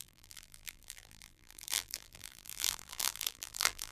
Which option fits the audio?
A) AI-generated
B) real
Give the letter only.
A